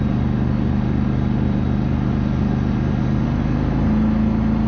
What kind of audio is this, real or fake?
real